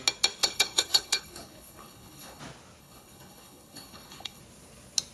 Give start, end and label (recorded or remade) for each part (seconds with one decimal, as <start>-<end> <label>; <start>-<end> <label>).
0.0-0.4 recorded; 0.4-2.4 remade; 2.4-2.8 recorded; 2.8-4.4 remade; 4.4-5.1 recorded